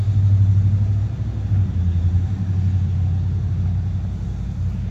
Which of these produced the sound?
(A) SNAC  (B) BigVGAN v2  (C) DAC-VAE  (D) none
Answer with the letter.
D